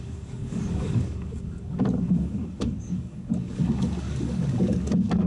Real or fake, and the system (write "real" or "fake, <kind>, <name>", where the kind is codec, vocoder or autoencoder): fake, codec, DAC